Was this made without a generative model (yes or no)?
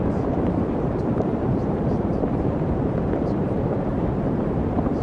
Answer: no